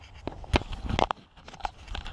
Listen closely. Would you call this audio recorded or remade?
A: recorded